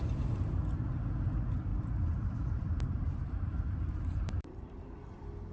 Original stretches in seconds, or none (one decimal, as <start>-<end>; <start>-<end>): 0.0-1.7; 5.0-5.5